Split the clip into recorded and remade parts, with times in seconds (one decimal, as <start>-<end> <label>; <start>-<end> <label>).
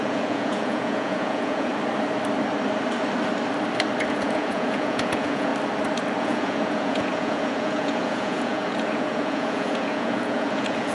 0.0-1.7 remade; 1.7-4.1 recorded; 4.1-5.5 remade; 5.5-6.2 recorded; 6.2-10.9 remade